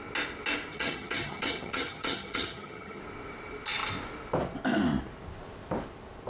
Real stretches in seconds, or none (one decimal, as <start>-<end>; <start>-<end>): 0.0-0.7; 3.0-6.3